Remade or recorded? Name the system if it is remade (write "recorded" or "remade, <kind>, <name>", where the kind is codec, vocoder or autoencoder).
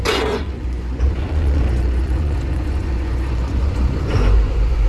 remade, vocoder, Vocos